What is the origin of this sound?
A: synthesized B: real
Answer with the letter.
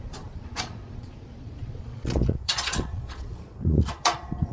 A